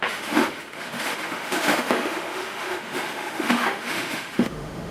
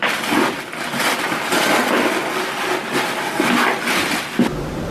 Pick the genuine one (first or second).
second